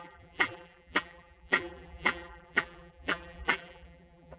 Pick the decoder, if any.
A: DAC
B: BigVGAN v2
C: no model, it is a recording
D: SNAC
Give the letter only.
B